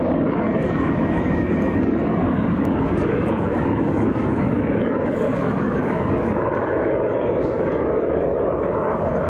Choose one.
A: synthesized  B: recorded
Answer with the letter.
A